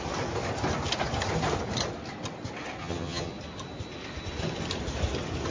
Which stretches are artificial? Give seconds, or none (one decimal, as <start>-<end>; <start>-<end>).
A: 2.8-3.3

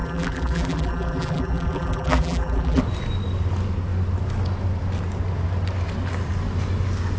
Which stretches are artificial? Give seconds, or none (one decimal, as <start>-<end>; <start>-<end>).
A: 0.0-2.8

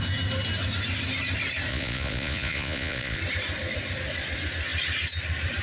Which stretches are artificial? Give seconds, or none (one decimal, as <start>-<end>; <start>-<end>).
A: 1.7-3.2

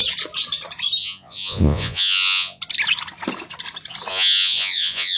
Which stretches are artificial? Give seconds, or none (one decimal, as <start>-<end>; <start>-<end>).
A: 1.0-2.6; 4.1-5.2

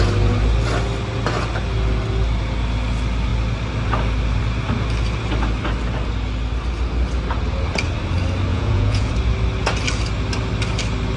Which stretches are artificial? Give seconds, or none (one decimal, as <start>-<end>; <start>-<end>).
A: 8.5-9.1